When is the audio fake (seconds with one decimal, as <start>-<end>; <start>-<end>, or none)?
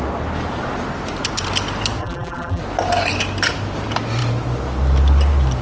2.0-2.6